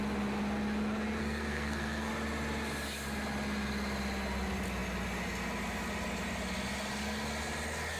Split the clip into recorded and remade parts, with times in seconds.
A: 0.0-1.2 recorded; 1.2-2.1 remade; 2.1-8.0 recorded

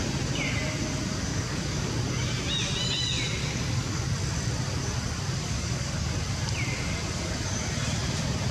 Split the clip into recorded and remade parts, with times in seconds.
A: 0.0-1.3 recorded; 1.3-1.9 remade; 1.9-3.4 recorded; 3.4-4.0 remade; 4.0-5.4 recorded; 5.4-6.1 remade; 6.1-8.5 recorded

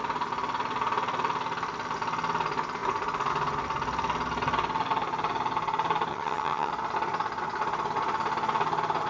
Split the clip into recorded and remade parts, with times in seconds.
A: 0.0-6.1 recorded; 6.1-6.7 remade; 6.7-9.1 recorded